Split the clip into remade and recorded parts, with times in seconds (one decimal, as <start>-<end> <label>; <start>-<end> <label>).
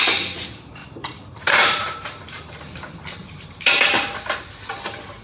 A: 0.0-0.8 recorded; 0.8-2.6 remade; 2.6-3.2 recorded; 3.2-3.8 remade; 3.8-5.2 recorded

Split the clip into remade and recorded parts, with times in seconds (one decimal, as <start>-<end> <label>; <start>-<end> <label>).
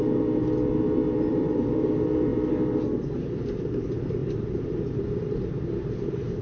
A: 0.0-1.3 recorded; 1.3-1.9 remade; 1.9-4.2 recorded; 4.2-6.4 remade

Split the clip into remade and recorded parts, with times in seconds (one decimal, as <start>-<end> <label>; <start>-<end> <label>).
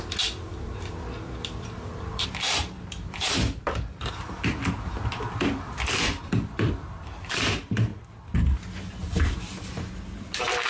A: 0.0-4.1 remade; 4.1-4.8 recorded; 4.8-7.9 remade; 7.9-8.8 recorded; 8.8-10.7 remade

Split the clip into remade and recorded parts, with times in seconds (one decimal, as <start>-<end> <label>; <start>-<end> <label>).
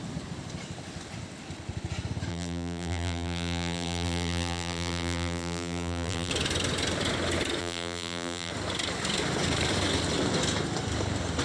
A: 0.0-2.3 recorded; 2.3-6.3 remade; 6.3-7.6 recorded; 7.6-8.5 remade; 8.5-11.4 recorded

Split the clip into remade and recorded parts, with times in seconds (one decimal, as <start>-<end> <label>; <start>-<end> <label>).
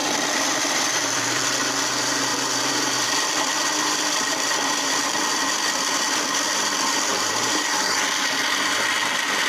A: 0.0-1.4 remade; 1.4-2.3 recorded; 2.3-5.7 remade; 5.7-7.1 recorded; 7.1-8.4 remade; 8.4-9.5 recorded